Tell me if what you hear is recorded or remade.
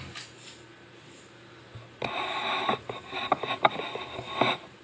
recorded